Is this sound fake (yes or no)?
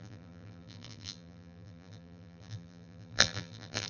yes